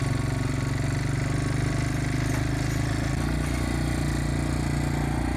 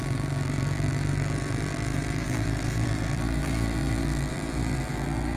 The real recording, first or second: first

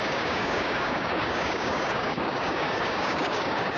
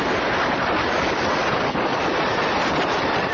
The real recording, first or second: second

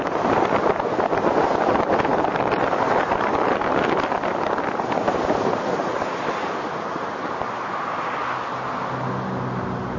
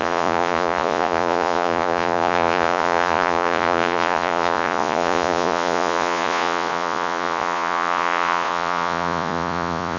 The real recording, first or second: first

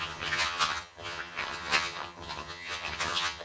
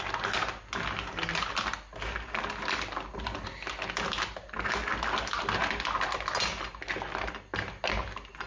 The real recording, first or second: second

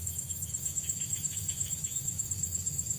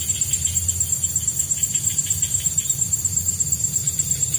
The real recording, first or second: second